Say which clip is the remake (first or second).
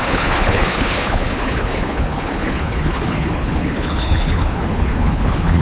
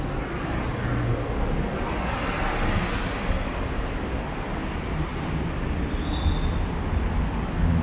first